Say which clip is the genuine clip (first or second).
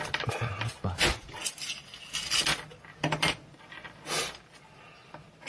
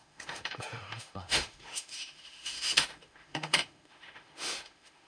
first